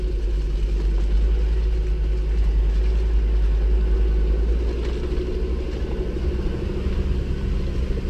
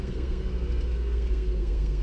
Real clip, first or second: first